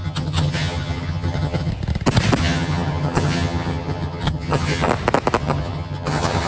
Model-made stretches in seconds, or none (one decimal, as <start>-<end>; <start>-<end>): 0.0-1.7; 2.4-4.9; 5.4-6.5